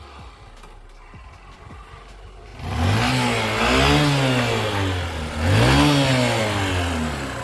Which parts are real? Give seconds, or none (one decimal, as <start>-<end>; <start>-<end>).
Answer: 0.0-7.4